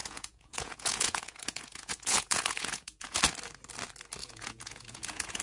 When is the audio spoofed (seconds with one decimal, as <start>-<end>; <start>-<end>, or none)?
0.0-3.2; 4.2-5.4